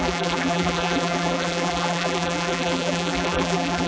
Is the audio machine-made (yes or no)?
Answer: yes